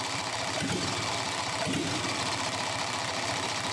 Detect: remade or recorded recorded